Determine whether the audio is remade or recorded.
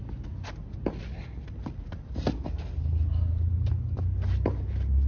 recorded